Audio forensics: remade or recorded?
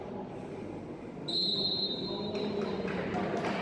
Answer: recorded